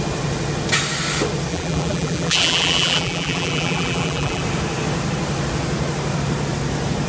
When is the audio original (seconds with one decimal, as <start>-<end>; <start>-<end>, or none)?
0.0-1.5; 4.4-7.1